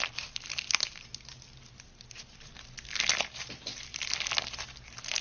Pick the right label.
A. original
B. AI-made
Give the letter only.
A